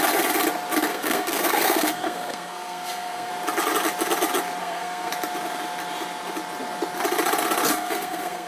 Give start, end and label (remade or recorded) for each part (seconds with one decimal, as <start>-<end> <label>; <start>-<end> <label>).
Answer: 0.0-0.9 recorded; 0.9-3.3 remade; 3.3-4.6 recorded; 4.6-5.1 remade; 5.1-7.7 recorded; 7.7-8.5 remade